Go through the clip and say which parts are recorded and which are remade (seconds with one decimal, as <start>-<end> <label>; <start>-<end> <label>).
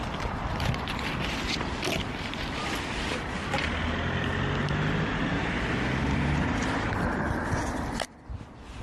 0.0-8.8 recorded